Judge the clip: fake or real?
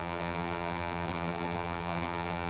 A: fake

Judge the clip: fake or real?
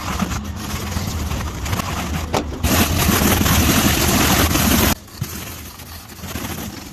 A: real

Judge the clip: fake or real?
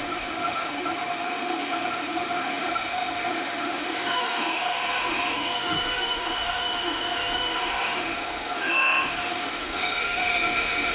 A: fake